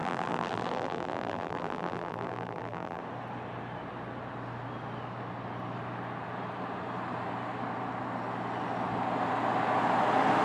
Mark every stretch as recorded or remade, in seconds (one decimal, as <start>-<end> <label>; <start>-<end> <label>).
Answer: 0.0-3.0 remade; 3.0-10.4 recorded